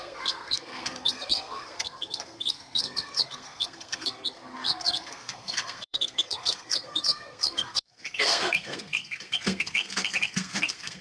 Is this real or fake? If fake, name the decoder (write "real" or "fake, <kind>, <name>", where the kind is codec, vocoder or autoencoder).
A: fake, codec, SNAC